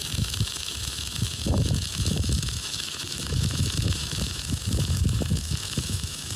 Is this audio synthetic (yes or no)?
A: yes